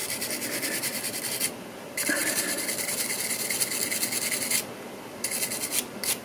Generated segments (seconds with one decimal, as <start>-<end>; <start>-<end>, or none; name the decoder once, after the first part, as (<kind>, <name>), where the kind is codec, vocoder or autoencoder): 2.2-3.6 (vocoder, BigVGAN v2)